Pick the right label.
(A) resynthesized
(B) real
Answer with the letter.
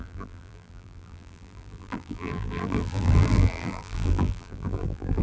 A